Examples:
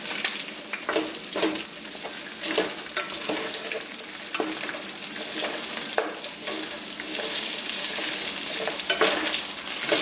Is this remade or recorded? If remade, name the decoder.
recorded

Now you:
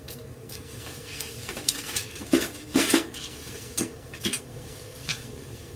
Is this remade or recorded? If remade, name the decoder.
remade, codec, SNAC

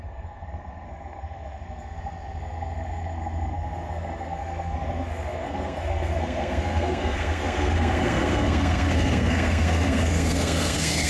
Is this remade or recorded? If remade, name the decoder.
remade, codec, SNAC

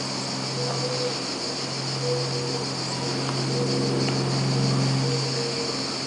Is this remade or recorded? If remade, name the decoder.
recorded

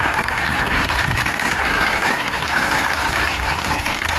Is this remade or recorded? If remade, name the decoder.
remade, codec, SNAC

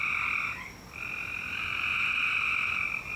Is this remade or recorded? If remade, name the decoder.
recorded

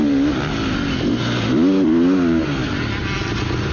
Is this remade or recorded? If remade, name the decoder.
recorded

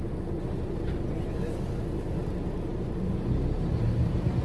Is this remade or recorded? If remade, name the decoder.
recorded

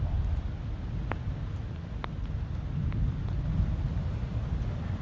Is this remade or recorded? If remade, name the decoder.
recorded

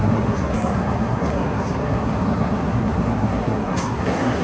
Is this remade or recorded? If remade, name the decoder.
remade, codec, SNAC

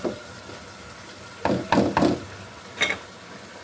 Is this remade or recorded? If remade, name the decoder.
recorded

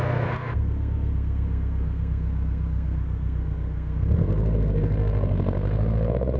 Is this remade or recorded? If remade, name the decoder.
remade, codec, SNAC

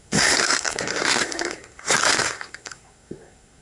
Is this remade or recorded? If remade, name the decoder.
remade, codec, SNAC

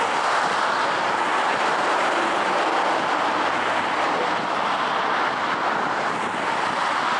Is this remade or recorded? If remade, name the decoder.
recorded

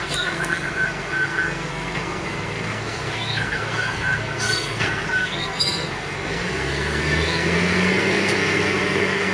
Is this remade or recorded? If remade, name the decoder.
remade, codec, SNAC